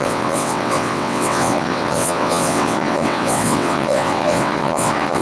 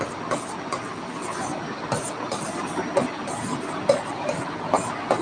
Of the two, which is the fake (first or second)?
first